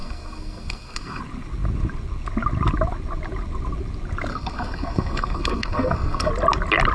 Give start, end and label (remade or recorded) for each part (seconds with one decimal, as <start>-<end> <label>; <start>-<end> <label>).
0.0-1.2 remade; 1.2-4.3 recorded; 4.3-6.3 remade; 6.3-6.9 recorded